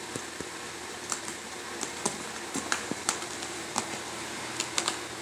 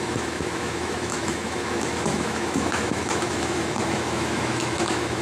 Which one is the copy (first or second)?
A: second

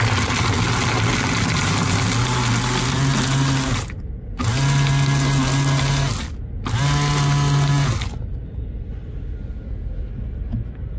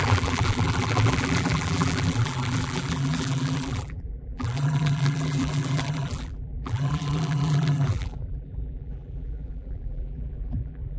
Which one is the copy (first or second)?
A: second